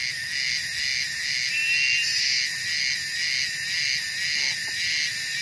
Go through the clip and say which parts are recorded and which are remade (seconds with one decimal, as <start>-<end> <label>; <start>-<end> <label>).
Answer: 0.0-5.4 recorded